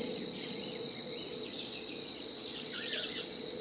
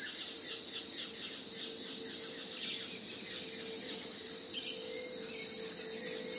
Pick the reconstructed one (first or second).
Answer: first